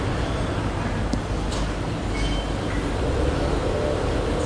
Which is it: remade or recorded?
recorded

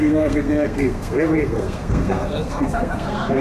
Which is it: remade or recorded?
remade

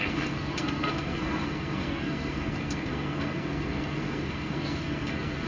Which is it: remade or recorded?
remade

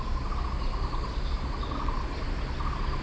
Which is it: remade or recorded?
recorded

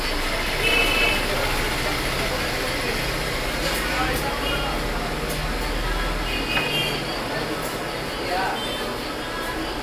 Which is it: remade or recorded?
recorded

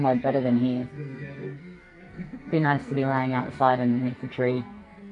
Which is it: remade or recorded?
remade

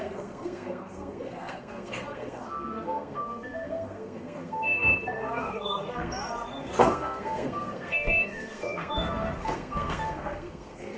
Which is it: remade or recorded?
remade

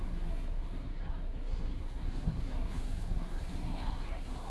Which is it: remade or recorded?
remade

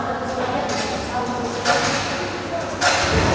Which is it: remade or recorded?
recorded